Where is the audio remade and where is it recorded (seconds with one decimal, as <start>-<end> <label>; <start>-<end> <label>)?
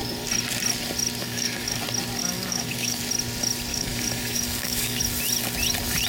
0.0-1.2 recorded; 1.2-1.8 remade; 1.8-2.2 recorded; 2.2-3.0 remade; 3.0-3.7 recorded; 3.7-5.0 remade; 5.0-6.1 recorded